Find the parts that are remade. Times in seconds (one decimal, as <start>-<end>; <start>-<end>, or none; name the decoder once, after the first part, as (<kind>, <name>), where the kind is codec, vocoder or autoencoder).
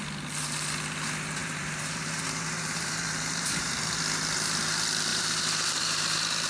1.4-3.8 (vocoder, BigVGAN v2); 5.1-6.5